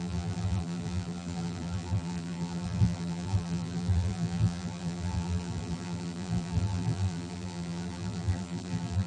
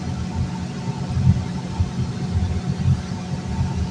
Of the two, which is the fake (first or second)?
first